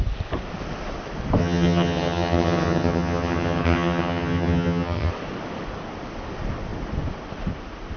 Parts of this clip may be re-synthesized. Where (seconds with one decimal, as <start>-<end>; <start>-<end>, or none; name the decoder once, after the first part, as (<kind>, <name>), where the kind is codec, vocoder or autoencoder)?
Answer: 1.4-5.1 (vocoder, HiFi-GAN)

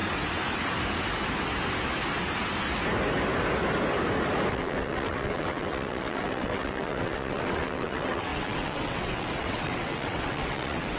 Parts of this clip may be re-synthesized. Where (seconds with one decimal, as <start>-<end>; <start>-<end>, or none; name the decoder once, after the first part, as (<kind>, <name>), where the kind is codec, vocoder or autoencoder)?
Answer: 4.5-11.0 (vocoder, WaveNeXt)

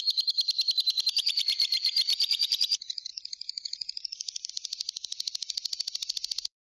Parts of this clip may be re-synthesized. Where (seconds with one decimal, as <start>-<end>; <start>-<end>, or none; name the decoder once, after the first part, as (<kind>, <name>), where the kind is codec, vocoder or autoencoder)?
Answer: 0.0-6.7 (vocoder, BigVGAN v2)

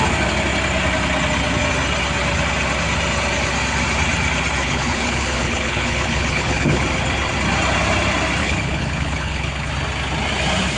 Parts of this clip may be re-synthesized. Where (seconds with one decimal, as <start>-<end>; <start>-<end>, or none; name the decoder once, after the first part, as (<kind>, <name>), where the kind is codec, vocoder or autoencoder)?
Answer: 4.6-6.8 (codec, HILCodec); 8.4-9.7

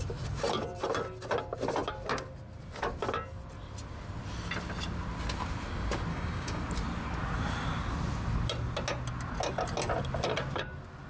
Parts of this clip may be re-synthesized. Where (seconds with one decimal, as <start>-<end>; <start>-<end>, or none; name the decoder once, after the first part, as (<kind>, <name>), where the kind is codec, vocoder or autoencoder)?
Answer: 6.1-6.6 (codec, DAC)